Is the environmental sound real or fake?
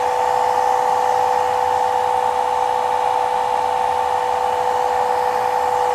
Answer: real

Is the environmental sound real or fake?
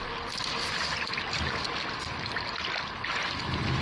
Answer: real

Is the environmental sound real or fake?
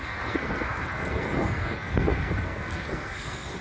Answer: fake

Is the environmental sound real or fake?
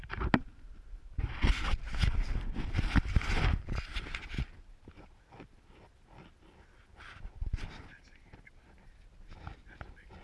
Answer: real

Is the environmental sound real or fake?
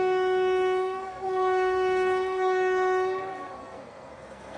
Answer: fake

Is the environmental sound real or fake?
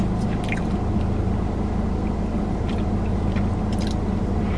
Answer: real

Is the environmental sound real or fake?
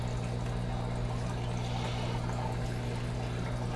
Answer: real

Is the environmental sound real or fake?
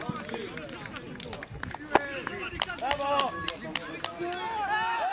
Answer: real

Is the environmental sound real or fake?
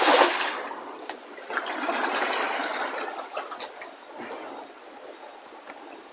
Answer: real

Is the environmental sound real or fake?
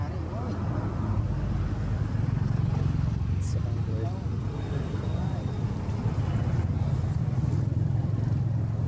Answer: real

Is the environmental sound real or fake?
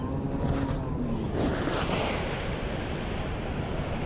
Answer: real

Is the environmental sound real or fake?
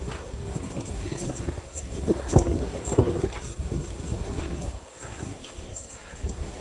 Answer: fake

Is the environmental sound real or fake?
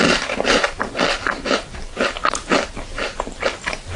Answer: real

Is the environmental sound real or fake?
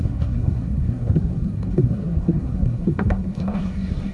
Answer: fake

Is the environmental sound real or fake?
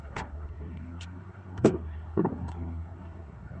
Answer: fake